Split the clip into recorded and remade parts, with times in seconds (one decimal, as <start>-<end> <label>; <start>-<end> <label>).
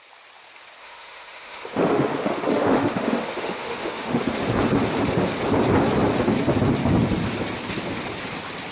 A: 0.0-0.8 recorded; 0.8-4.4 remade; 4.4-8.7 recorded